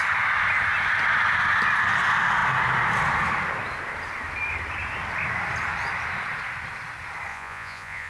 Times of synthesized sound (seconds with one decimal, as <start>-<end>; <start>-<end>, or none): 7.3-8.1